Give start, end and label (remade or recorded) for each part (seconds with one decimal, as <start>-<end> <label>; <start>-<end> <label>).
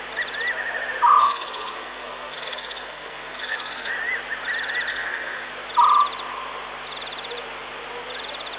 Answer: 0.0-1.2 recorded; 1.2-3.9 remade; 3.9-4.9 recorded; 4.9-5.5 remade; 5.5-8.6 recorded